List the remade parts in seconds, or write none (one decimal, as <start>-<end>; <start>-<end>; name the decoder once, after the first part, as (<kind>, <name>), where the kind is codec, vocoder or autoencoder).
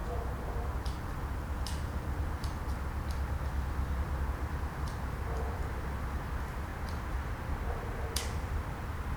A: 1.0-6.7 (vocoder, BigVGAN v2); 8.2-9.2